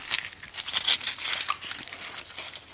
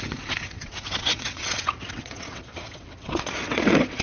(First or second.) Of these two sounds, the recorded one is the first